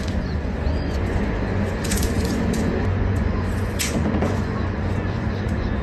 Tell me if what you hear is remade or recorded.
remade